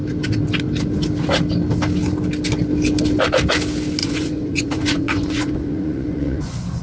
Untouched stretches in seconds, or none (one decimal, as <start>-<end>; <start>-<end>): 0.0-4.0